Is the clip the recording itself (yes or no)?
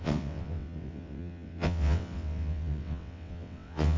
no